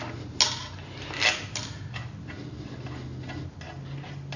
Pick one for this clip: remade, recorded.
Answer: recorded